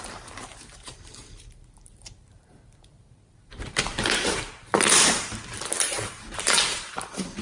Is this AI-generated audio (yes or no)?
yes